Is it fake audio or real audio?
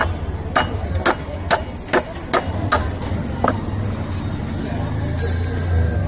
real